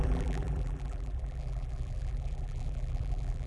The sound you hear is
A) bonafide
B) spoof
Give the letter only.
B